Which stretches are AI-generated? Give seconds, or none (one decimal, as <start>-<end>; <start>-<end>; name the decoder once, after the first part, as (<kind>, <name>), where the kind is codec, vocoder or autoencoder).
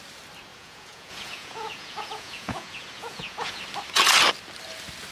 0.5-3.6 (vocoder, Vocos)